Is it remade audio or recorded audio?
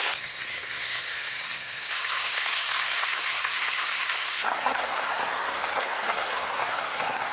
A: remade